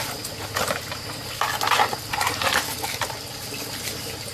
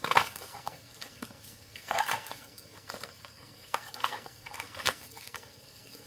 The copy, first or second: second